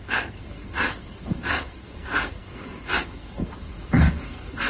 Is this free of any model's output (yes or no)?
no